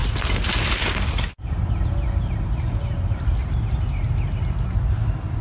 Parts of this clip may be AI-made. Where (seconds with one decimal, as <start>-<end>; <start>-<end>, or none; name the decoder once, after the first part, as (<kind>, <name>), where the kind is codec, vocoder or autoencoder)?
none